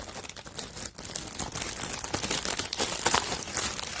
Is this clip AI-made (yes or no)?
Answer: no